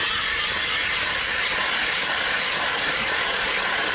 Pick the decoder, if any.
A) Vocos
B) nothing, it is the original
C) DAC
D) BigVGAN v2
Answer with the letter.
D